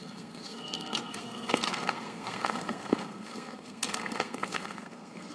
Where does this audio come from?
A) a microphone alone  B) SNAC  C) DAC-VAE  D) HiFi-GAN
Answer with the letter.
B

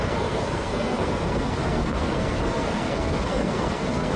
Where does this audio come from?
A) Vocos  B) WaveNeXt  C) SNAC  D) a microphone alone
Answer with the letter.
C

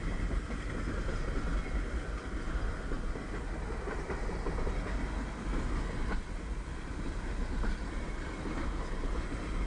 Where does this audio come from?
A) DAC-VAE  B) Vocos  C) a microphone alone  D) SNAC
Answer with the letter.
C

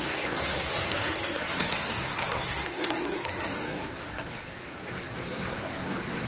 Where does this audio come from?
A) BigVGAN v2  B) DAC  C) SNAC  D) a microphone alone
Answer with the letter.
C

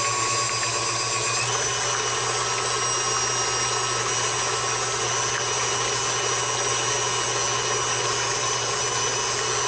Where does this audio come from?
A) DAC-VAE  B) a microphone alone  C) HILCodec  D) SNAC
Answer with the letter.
B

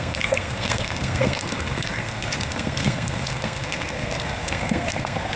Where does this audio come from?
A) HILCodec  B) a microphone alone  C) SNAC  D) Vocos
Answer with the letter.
C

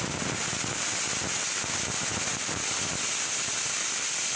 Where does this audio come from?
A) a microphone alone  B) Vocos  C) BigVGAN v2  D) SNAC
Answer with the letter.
A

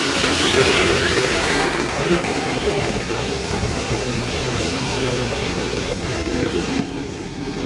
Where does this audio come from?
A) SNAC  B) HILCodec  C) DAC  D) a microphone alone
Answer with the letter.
A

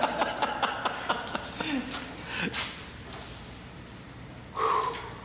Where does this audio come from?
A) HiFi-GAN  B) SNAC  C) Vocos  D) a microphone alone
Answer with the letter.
D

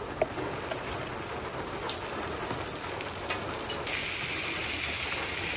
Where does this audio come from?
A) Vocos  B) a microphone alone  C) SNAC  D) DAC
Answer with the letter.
B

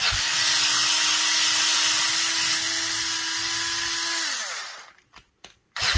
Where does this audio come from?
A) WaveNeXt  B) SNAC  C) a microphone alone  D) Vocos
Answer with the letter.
C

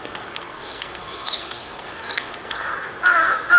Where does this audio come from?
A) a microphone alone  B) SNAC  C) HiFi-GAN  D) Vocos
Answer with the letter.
B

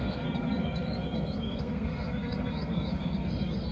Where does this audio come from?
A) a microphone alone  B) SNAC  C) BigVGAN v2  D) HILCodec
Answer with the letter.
B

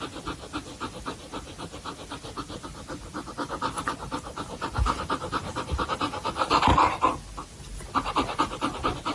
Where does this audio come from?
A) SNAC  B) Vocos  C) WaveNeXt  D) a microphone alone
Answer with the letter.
D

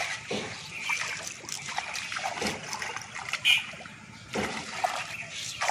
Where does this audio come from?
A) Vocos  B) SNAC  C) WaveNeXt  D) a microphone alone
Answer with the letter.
D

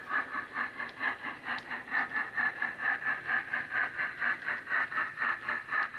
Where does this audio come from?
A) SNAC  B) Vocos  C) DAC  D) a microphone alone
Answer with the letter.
D